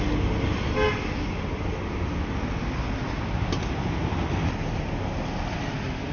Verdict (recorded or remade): recorded